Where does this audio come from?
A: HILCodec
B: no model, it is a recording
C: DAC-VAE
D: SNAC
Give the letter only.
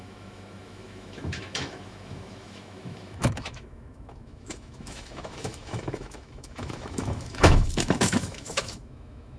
C